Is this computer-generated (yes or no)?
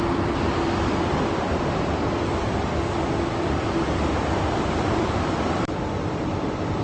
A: yes